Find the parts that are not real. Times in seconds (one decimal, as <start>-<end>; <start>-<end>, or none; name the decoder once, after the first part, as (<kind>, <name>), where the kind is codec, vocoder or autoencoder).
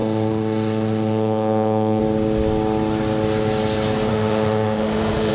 0.0-2.0 (autoencoder, DAC-VAE); 4.1-5.3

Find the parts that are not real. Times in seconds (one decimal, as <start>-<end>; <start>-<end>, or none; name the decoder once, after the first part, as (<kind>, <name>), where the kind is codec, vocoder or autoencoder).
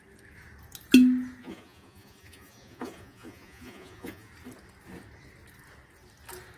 1.4-4.3 (vocoder, Vocos)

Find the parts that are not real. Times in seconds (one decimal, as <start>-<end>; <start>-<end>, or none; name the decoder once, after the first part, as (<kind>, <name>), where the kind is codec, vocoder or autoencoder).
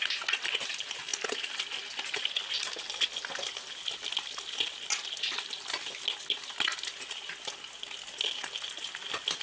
none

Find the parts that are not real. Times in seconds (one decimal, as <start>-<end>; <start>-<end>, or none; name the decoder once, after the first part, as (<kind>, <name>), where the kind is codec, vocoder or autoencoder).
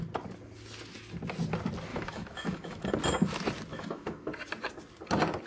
1.9-2.9 (autoencoder, DAC-VAE); 3.7-4.3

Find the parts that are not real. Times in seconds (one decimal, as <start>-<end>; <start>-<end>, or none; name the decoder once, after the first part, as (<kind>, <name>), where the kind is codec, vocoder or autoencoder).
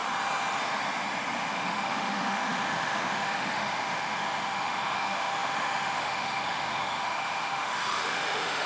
1.5-8.7 (autoencoder, DAC-VAE)